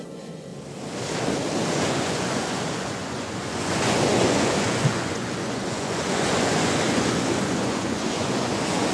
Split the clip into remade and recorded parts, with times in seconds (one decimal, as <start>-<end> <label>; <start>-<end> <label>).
0.0-0.5 remade; 0.5-1.7 recorded; 1.7-8.9 remade